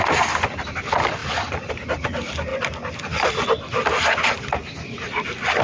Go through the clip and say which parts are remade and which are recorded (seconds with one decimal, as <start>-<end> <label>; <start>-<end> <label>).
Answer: 0.0-5.6 recorded